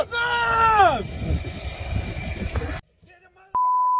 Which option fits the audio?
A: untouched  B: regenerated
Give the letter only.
A